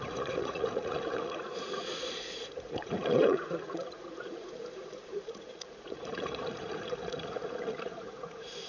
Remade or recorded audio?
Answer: remade